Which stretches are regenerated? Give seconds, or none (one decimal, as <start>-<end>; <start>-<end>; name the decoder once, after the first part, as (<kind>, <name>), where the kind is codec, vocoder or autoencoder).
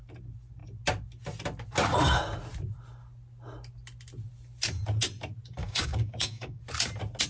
5.6-6.6 (codec, DAC)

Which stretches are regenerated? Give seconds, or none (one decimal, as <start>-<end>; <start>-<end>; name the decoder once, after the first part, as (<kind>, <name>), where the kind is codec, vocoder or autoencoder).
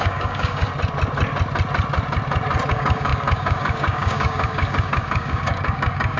0.0-0.7 (codec, DAC); 2.7-6.2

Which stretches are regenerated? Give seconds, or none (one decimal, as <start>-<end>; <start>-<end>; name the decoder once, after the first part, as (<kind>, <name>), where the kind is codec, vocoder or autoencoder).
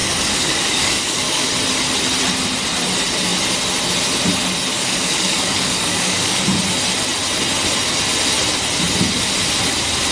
0.0-1.5 (codec, DAC); 4.7-6.4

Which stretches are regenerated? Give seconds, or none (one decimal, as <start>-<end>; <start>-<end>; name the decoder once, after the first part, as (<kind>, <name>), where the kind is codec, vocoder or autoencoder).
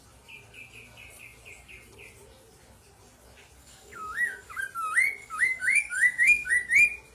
3.6-4.6 (codec, DAC); 5.2-6.5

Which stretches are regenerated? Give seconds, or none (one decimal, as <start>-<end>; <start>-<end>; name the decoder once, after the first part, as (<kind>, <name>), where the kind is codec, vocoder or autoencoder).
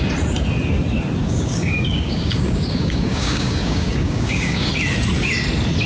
1.2-4.7 (codec, DAC)